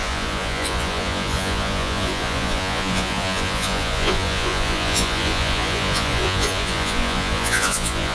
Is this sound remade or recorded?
remade